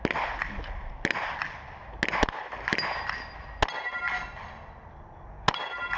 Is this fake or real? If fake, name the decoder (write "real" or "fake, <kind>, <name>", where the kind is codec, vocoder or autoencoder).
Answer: real